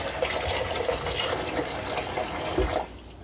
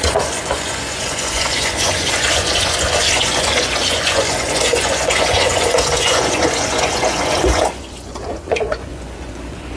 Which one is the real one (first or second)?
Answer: first